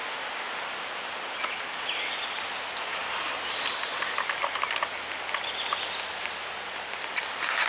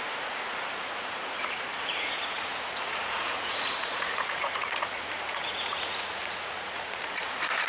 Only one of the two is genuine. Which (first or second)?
first